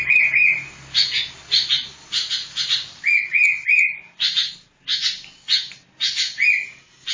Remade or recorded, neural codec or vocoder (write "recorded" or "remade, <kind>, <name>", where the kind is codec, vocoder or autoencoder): recorded